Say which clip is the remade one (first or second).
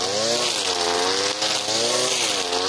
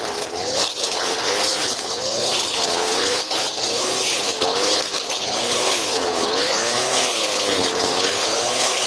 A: second